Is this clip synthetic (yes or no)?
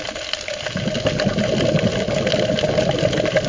no